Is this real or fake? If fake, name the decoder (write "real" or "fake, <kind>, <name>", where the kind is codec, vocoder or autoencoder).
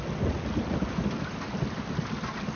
real